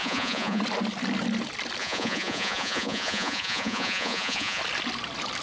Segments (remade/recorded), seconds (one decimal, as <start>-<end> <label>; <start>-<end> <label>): 0.0-0.6 remade; 0.6-1.8 recorded; 1.8-4.6 remade; 4.6-5.4 recorded